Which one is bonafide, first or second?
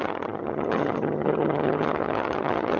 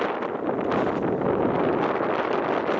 second